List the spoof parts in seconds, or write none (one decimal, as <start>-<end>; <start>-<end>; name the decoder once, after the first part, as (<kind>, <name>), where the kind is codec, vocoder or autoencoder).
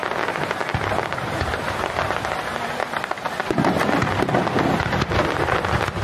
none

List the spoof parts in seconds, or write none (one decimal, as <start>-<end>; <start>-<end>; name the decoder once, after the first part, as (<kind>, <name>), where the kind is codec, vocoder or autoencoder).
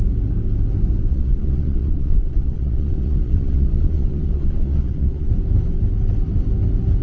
1.1-5.3 (vocoder, Vocos)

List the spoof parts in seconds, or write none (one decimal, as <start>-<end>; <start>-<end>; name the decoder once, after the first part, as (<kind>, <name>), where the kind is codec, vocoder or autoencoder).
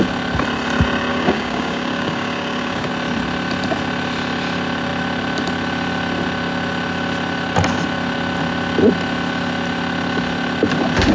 1.1-2.9 (codec, DAC)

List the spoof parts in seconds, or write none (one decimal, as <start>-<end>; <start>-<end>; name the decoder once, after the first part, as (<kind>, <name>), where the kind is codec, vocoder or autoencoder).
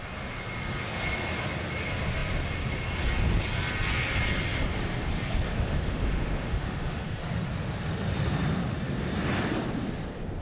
5.5-7.2 (autoencoder, DAC-VAE)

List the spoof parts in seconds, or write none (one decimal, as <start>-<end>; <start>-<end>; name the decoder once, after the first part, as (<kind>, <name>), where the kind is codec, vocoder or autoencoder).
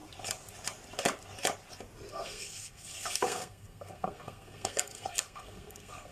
2.1-6.1 (codec, SNAC)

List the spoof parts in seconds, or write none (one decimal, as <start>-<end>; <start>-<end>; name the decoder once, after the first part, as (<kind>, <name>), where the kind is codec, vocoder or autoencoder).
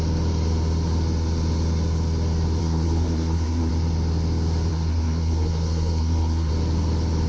2.6-3.7 (codec, SNAC); 4.7-6.5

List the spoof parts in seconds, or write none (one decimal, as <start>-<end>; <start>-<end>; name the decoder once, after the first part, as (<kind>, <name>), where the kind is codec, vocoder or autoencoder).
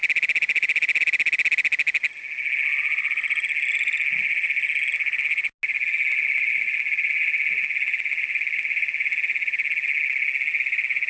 none